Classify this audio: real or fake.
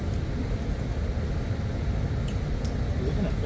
real